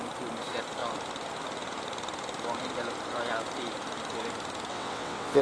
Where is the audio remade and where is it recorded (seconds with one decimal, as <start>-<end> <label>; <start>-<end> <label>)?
0.0-4.7 recorded; 4.7-5.4 remade